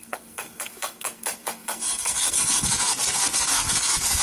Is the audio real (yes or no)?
no